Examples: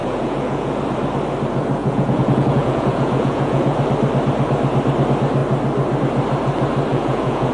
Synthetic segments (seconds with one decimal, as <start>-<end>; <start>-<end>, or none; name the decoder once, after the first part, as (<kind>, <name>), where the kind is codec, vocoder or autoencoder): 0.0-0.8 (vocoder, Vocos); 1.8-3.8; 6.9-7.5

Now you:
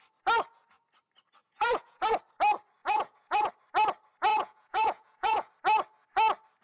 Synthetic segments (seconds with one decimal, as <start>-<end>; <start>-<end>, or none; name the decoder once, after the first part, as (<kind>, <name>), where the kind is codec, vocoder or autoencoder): 1.4-2.1 (vocoder, Vocos); 2.8-3.5; 4.3-5.5

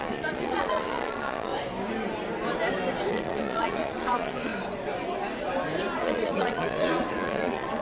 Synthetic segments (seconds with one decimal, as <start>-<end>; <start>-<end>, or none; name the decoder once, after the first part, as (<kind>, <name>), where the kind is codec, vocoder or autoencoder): 0.0-1.5 (vocoder, Vocos); 3.1-4.5; 6.0-7.8